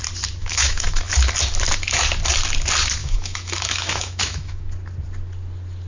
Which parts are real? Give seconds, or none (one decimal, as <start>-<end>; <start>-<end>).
0.0-0.4; 1.1-3.0; 4.7-5.9